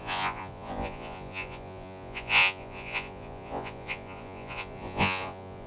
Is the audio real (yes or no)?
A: no